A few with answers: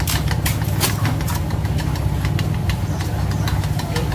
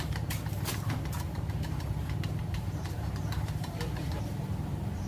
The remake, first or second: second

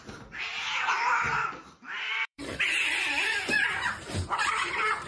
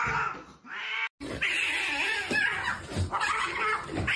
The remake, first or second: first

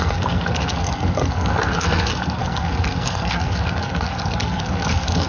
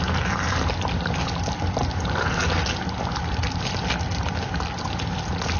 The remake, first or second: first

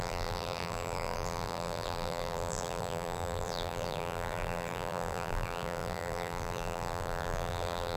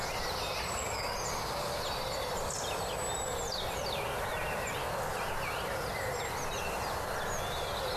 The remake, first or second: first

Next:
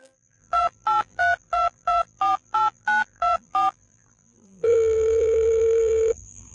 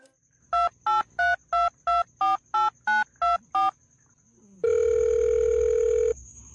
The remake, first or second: first